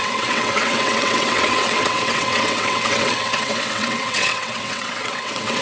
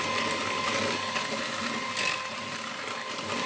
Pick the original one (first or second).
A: second